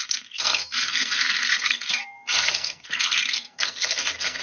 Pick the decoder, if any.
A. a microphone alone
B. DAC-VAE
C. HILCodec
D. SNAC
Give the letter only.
D